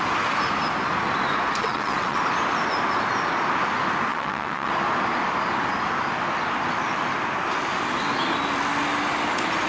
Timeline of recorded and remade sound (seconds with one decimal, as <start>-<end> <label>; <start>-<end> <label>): 0.0-1.6 recorded; 1.6-2.2 remade; 2.2-4.1 recorded; 4.1-4.7 remade; 4.7-9.7 recorded